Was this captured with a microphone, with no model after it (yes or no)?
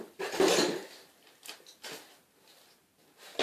yes